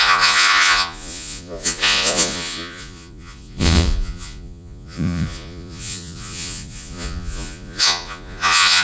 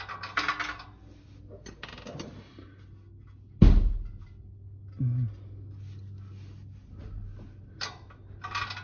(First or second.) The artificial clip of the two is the first